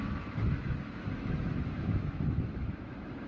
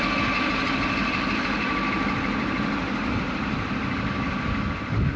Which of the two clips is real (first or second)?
second